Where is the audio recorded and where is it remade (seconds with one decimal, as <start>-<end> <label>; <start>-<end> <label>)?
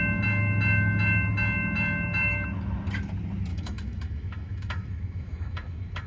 0.0-3.5 recorded; 3.5-6.1 remade